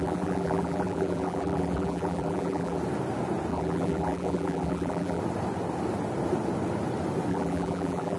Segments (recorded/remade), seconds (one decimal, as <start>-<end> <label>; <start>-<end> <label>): 0.0-2.8 remade; 2.8-3.5 recorded; 3.5-5.2 remade; 5.2-7.3 recorded; 7.3-8.2 remade

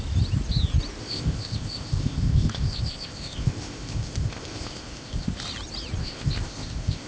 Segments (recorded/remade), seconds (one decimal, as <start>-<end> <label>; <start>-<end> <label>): 0.0-1.0 recorded; 1.0-5.3 remade; 5.3-6.0 recorded; 6.0-7.1 remade